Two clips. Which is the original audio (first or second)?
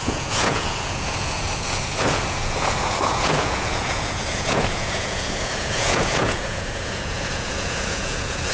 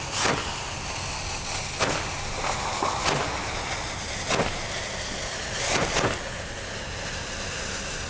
second